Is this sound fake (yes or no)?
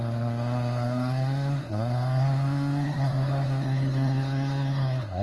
yes